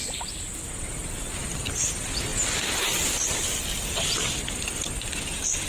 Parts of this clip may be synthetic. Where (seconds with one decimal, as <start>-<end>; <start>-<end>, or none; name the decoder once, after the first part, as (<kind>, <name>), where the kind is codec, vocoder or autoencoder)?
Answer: none